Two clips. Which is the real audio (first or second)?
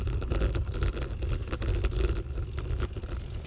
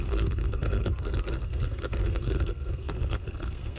first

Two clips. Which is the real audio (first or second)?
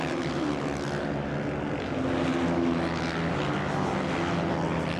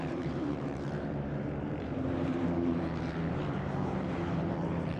first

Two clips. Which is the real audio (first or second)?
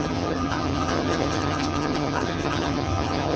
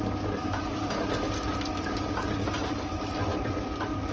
second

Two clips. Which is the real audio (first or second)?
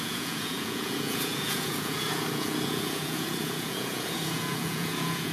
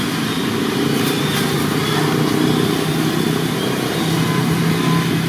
second